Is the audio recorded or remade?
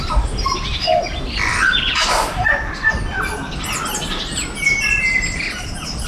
recorded